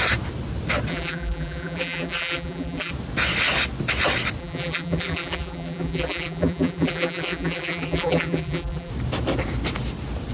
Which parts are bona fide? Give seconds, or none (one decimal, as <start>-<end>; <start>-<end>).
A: 0.0-0.9; 2.9-4.4; 8.9-10.3